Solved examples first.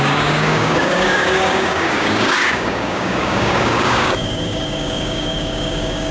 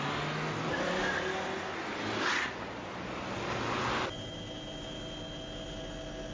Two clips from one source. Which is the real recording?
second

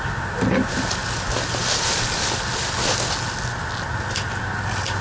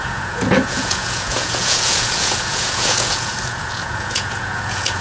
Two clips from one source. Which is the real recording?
first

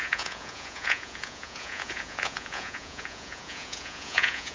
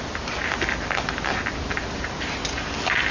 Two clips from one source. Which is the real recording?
second